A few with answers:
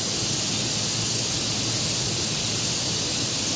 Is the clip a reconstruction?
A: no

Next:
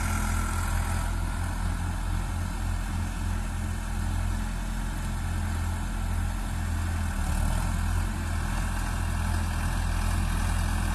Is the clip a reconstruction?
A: no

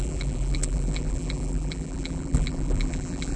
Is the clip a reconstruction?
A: yes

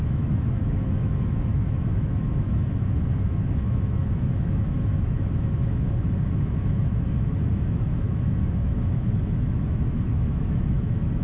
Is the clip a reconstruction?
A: yes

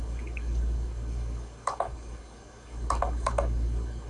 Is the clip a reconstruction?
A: yes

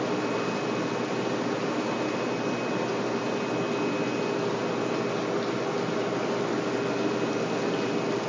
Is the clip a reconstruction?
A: no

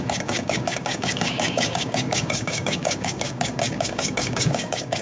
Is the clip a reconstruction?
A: yes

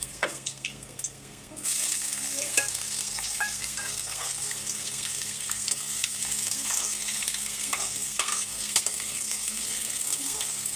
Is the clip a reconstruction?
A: yes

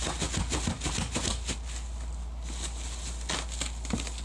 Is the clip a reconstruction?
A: no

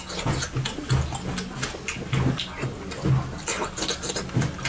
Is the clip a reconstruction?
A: no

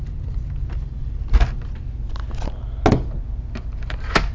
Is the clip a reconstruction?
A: no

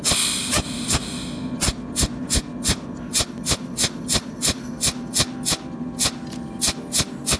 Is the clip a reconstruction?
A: no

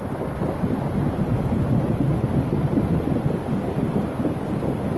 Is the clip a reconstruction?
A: no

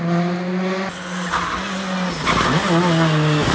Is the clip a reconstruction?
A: no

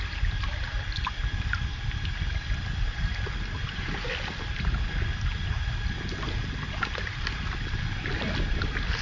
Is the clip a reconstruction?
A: no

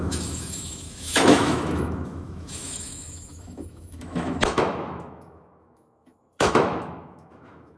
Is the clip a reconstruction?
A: yes